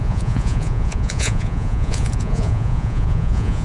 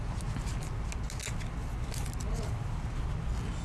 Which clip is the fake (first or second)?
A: first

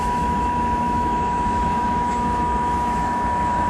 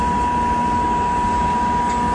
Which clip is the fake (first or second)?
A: first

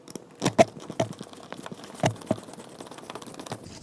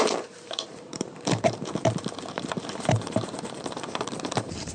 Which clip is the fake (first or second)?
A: second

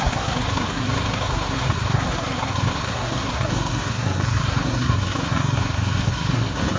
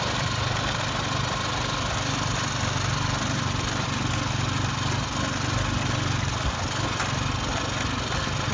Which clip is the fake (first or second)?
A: first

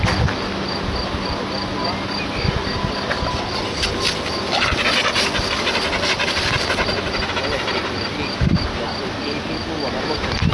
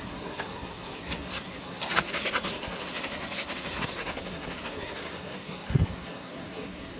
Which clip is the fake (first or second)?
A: second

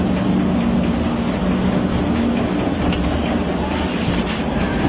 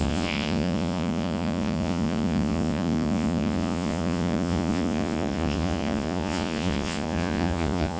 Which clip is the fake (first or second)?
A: second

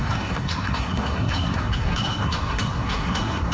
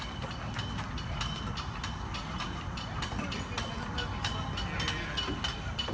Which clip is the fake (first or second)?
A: first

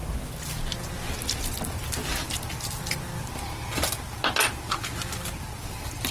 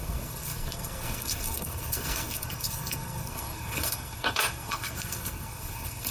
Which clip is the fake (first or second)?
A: second